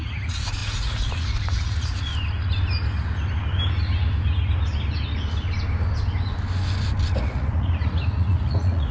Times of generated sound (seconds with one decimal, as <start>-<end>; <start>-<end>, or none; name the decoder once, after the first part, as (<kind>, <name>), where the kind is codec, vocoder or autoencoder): 0.0-2.1 (vocoder, Vocos); 7.2-8.9